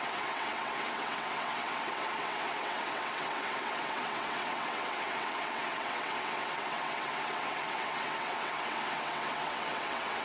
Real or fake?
fake